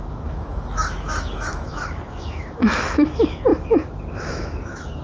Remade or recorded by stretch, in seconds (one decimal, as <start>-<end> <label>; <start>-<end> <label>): 0.0-5.0 remade

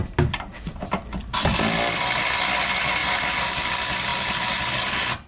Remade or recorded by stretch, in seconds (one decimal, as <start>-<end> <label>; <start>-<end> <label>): 0.0-3.0 recorded; 3.0-3.6 remade; 3.6-4.1 recorded; 4.1-4.6 remade; 4.6-5.3 recorded